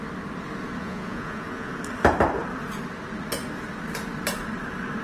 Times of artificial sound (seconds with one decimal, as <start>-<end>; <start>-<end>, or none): 0.8-1.7